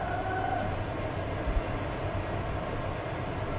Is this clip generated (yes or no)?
no